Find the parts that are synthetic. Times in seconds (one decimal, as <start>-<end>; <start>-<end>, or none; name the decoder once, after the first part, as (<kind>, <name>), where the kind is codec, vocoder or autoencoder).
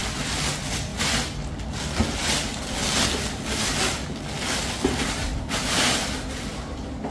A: none